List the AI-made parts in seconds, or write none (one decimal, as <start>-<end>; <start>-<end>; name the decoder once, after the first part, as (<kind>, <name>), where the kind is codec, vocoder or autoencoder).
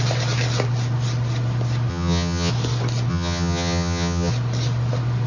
1.9-2.5 (vocoder, HiFi-GAN); 3.1-4.3